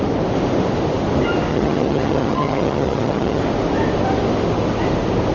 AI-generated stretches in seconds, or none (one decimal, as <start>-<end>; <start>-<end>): 1.5-3.4